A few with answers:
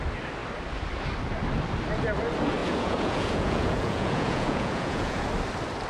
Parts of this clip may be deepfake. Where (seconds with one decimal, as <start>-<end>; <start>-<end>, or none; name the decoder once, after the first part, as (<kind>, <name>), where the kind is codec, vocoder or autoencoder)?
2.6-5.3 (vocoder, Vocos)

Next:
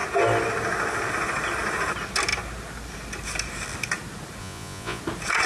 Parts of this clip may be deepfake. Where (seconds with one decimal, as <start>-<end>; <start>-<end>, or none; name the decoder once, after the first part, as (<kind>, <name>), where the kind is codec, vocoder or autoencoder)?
4.4-5.0 (vocoder, Vocos)

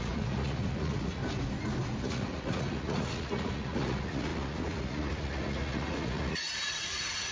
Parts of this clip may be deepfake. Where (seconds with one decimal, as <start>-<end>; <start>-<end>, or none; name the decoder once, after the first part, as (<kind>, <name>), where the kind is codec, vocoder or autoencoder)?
0.0-1.2 (vocoder, Vocos); 2.0-7.3

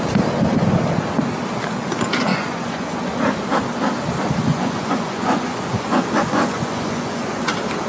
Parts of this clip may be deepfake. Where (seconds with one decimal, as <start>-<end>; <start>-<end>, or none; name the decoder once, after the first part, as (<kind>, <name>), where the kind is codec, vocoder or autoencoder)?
2.3-3.1 (vocoder, Vocos); 4.5-7.5

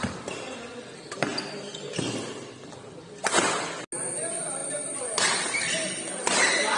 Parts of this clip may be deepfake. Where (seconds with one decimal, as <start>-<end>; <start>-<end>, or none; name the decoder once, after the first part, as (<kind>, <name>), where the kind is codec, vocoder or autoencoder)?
none

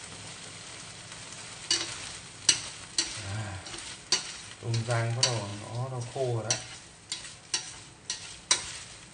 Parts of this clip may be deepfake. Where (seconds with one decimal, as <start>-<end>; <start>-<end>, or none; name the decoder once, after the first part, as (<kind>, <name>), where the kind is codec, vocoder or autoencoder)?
none

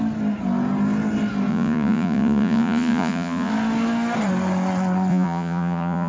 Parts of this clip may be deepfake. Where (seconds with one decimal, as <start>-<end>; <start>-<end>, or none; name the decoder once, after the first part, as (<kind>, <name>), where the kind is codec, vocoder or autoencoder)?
1.5-3.5 (vocoder, Vocos); 5.1-6.1